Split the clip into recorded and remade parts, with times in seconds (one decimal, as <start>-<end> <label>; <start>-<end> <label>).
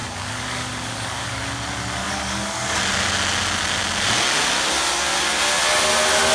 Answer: 0.0-1.4 remade; 1.4-2.0 recorded; 2.0-2.8 remade; 2.8-6.3 recorded